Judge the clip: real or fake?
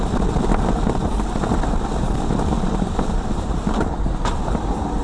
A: real